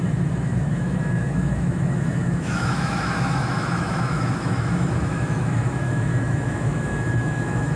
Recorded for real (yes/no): no